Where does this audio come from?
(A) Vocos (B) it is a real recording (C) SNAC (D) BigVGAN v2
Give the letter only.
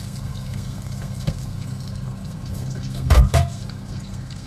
C